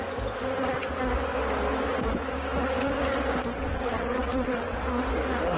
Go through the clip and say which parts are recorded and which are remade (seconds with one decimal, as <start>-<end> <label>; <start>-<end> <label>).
0.0-3.6 recorded; 3.6-4.8 remade; 4.8-5.6 recorded